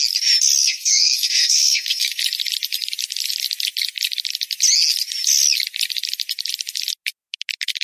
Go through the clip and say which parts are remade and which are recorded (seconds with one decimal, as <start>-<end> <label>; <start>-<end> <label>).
0.0-0.6 recorded; 0.6-2.2 remade; 2.2-7.8 recorded

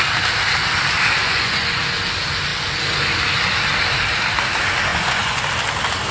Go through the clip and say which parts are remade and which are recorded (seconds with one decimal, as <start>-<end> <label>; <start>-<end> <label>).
0.0-1.2 recorded; 1.2-1.8 remade; 1.8-4.9 recorded; 4.9-5.4 remade; 5.4-6.1 recorded

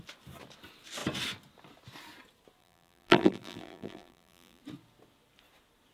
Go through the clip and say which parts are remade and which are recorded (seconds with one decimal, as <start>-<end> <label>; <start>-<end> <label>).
0.0-2.6 recorded; 2.6-4.6 remade; 4.6-5.9 recorded

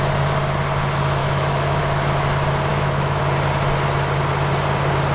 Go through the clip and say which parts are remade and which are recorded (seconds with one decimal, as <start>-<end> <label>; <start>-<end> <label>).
0.0-1.2 recorded; 1.2-1.8 remade; 1.8-2.7 recorded; 2.7-3.2 remade; 3.2-5.1 recorded

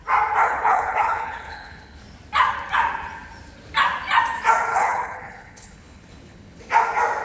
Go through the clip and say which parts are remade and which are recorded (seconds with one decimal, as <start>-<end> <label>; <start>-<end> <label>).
0.0-0.4 recorded; 0.4-2.0 remade; 2.0-4.7 recorded; 4.7-6.6 remade; 6.6-7.2 recorded